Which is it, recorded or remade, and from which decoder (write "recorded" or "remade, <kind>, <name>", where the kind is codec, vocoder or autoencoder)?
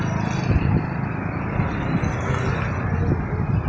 recorded